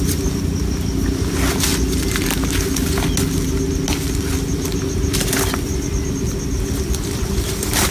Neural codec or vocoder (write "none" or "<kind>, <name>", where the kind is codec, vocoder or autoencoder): none